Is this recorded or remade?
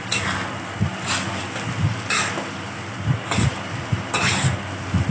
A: recorded